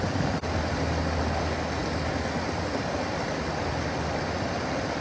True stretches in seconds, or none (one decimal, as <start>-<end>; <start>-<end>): 0.0-5.0